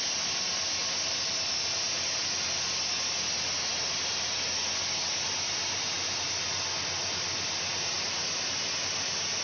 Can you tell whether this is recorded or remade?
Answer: recorded